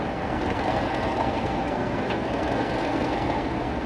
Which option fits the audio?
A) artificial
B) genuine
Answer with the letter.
A